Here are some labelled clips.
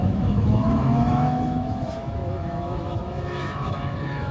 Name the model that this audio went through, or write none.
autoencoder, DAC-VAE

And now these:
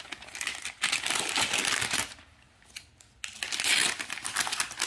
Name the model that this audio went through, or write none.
none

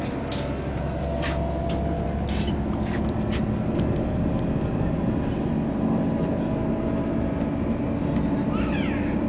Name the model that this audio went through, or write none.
none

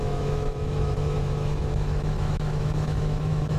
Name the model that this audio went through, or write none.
autoencoder, DAC-VAE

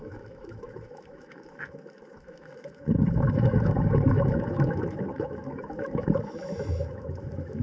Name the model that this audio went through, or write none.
autoencoder, DAC-VAE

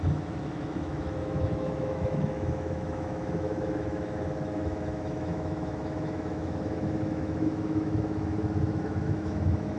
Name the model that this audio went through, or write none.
autoencoder, DAC-VAE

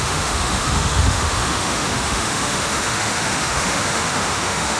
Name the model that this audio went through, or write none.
autoencoder, DAC-VAE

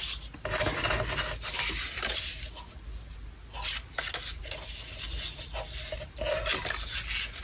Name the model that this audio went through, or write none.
none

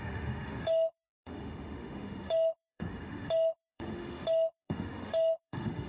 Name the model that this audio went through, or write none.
autoencoder, DAC-VAE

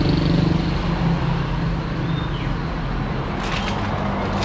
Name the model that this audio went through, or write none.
none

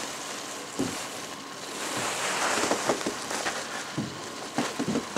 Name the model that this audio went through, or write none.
none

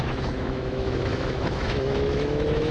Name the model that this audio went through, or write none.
autoencoder, DAC-VAE